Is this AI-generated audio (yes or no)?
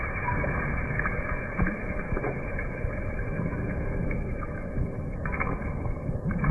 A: yes